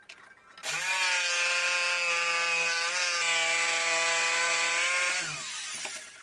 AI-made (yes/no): no